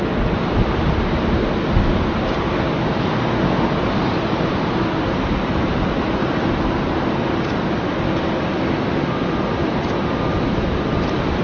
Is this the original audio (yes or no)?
yes